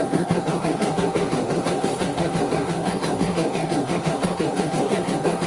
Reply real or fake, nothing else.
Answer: fake